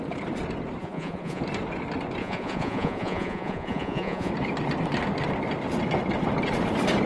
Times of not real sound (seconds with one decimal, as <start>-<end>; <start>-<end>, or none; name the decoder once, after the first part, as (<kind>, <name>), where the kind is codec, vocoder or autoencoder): 0.8-1.4 (vocoder, Vocos); 2.2-4.3